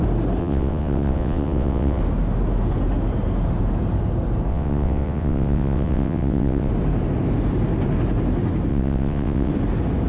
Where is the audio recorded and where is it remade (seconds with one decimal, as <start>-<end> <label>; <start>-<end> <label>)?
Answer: 0.0-0.4 recorded; 0.4-2.0 remade; 2.0-4.5 recorded; 4.5-6.7 remade; 6.7-8.7 recorded; 8.7-9.5 remade; 9.5-10.1 recorded